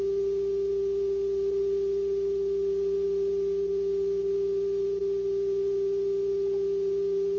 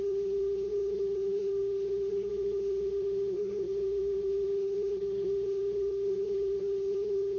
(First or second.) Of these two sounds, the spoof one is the second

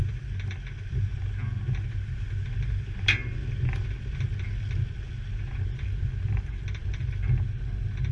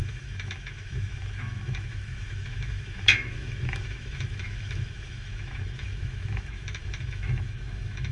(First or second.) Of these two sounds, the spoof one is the second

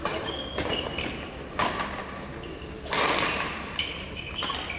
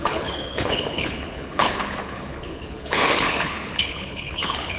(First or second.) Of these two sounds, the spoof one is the second